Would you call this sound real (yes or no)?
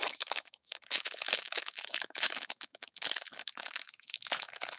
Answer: no